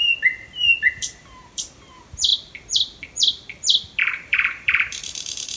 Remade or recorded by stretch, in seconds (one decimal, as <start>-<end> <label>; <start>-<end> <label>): 0.0-0.9 recorded; 0.9-2.3 remade; 2.3-4.0 recorded; 4.0-5.6 remade

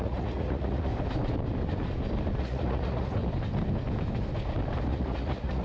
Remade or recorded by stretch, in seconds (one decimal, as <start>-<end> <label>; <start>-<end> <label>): 0.0-0.9 remade; 0.9-2.4 recorded; 2.4-3.2 remade; 3.2-4.9 recorded; 4.9-5.6 remade

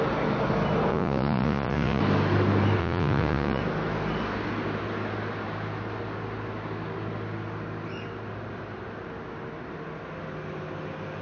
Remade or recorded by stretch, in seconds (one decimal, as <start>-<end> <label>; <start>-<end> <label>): 0.0-0.9 recorded; 0.9-2.0 remade; 2.0-2.8 recorded; 2.8-3.6 remade; 3.6-11.2 recorded

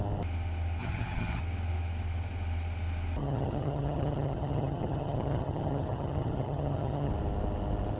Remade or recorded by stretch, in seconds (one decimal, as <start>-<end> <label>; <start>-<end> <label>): 0.0-0.8 recorded; 0.8-1.4 remade; 1.4-3.2 recorded; 3.2-7.1 remade; 7.1-8.0 recorded

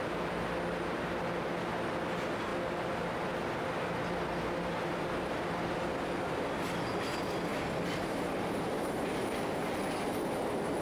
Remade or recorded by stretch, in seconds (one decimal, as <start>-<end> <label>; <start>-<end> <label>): 0.0-7.5 recorded; 7.5-9.6 remade; 9.6-10.8 recorded

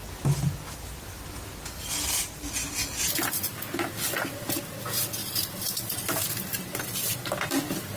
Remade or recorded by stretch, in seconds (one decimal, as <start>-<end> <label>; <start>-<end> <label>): 0.0-5.2 recorded; 5.2-5.8 remade; 5.8-8.0 recorded

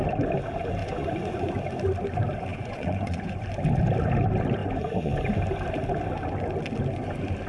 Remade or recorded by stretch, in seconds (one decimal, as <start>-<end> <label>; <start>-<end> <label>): 0.0-0.8 recorded; 0.8-1.5 remade; 1.5-2.5 recorded; 2.5-3.4 remade; 3.4-4.6 recorded; 4.6-5.3 remade; 5.3-7.5 recorded

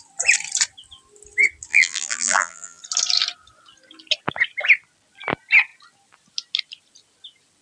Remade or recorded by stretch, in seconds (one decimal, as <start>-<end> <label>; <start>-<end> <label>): 0.0-1.7 recorded; 1.7-2.8 remade; 2.8-7.6 recorded